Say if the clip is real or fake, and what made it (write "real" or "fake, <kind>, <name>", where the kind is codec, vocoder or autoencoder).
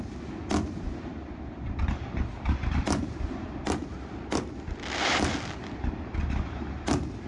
real